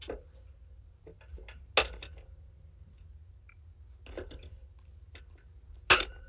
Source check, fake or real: real